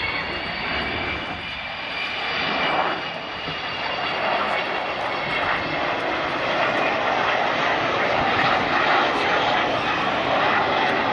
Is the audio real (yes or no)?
yes